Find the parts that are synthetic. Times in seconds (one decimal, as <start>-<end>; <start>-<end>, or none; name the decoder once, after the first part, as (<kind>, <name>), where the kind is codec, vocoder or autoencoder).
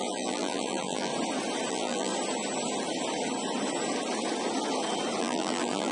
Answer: 0.0-1.1 (vocoder, BigVGAN v2); 1.7-2.1; 5.2-5.9